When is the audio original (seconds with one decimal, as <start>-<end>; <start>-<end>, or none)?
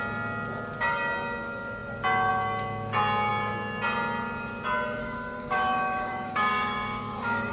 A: 0.0-5.0